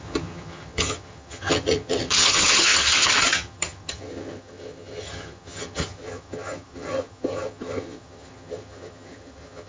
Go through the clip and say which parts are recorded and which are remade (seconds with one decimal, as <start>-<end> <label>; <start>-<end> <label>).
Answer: 0.0-9.7 remade